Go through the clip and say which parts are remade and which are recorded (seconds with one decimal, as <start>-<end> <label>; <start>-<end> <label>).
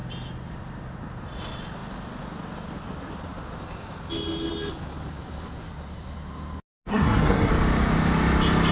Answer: 0.0-6.9 recorded; 6.9-7.5 remade; 7.5-8.7 recorded